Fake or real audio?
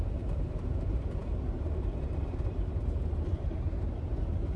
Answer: fake